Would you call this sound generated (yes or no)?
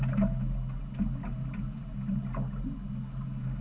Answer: no